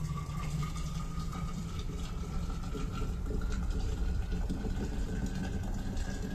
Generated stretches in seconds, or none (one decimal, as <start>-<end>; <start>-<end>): 1.3-5.1